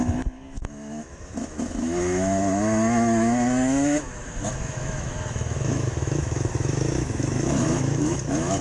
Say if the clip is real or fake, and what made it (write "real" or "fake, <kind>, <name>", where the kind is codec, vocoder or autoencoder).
fake, autoencoder, DAC-VAE